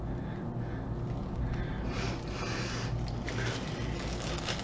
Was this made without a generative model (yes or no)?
yes